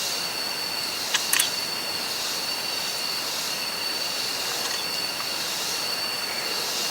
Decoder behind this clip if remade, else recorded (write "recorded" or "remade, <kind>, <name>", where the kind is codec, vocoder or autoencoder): recorded